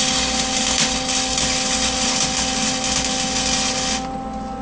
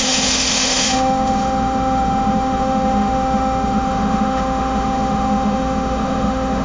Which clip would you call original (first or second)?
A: first